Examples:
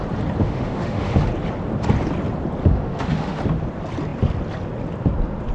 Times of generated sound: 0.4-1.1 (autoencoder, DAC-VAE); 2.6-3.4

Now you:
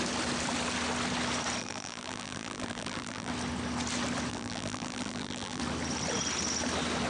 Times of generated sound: 1.6-3.3 (vocoder, BigVGAN v2); 4.3-5.6

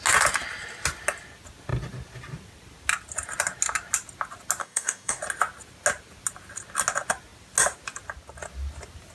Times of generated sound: 4.6-5.2 (codec, DAC)

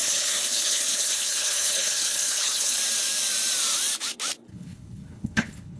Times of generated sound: 0.0-2.8 (codec, HILCodec); 4.5-5.8

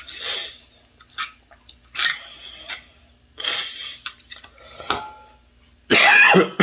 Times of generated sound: none

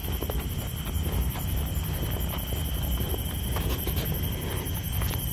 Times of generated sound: none

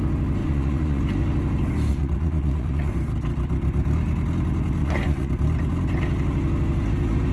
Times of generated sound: 0.4-1.0 (vocoder, Vocos); 1.9-2.9; 4.8-5.3

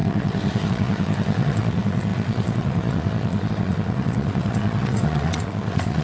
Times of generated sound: 0.0-6.0 (vocoder, WaveNeXt)